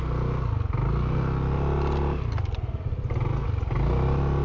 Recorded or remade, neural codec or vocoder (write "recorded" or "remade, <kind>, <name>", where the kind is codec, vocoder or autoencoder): recorded